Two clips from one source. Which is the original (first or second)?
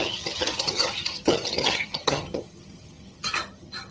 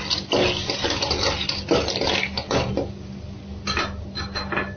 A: second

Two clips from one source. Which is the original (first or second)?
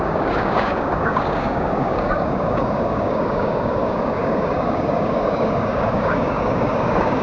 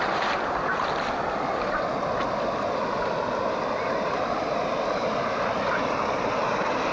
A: second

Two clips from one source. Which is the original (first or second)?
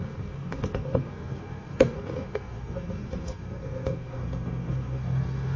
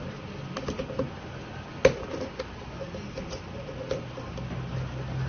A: second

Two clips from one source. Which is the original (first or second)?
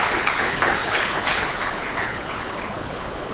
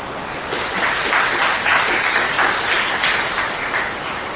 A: second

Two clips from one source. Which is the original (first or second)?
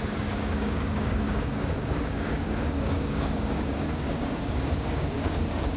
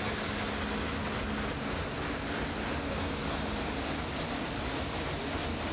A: second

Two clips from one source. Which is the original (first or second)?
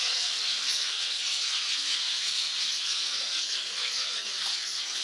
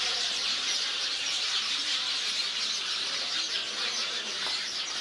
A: second